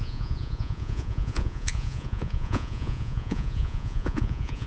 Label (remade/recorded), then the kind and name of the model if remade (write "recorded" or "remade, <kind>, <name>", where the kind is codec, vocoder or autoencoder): remade, vocoder, Vocos